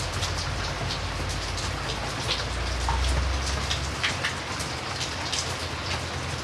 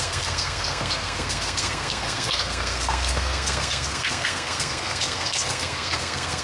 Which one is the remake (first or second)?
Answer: second